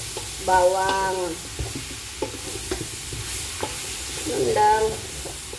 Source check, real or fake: real